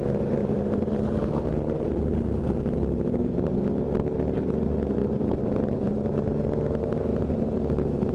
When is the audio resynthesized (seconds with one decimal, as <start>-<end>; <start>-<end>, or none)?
0.4-2.4; 5.0-5.9; 7.1-8.1

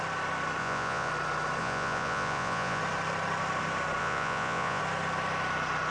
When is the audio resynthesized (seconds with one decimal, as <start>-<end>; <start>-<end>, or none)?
0.6-1.1; 1.6-2.8; 4.0-4.8

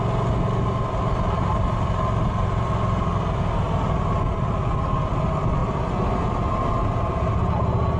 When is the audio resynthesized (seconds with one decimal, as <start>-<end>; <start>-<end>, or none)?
none